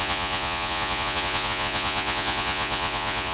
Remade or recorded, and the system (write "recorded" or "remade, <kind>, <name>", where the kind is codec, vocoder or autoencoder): remade, vocoder, Vocos